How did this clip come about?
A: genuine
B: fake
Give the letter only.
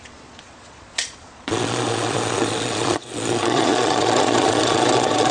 B